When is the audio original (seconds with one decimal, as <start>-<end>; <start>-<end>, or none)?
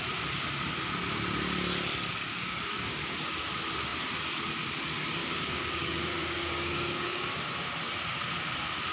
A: 0.0-2.1; 3.0-5.2; 7.3-8.9